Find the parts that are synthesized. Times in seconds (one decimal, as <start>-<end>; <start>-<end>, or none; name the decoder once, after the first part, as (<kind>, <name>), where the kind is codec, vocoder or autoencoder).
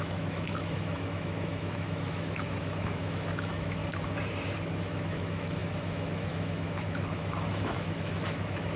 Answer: 0.0-3.8 (autoencoder, DAC-VAE); 4.8-8.8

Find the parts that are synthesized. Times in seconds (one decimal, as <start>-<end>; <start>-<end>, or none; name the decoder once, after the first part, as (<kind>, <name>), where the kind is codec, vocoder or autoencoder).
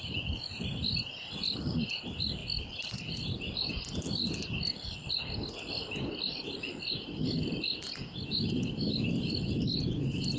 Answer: none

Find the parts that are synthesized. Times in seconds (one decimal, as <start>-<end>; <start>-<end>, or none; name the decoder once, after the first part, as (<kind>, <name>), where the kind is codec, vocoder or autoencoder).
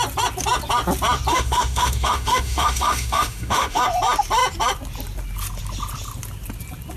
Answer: 1.3-3.8 (autoencoder, DAC-VAE)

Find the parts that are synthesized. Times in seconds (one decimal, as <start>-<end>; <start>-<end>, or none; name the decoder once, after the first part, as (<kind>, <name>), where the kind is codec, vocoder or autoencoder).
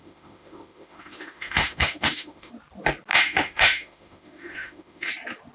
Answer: 0.0-2.5 (autoencoder, DAC-VAE); 3.1-5.1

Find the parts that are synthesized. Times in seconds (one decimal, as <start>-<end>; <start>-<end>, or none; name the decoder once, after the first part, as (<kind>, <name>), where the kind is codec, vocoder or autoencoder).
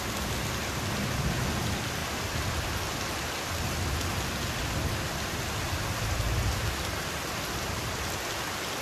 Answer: none